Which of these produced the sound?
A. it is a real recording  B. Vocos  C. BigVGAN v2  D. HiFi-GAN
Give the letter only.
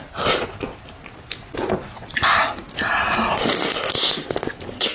A